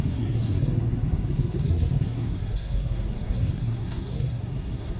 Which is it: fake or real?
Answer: fake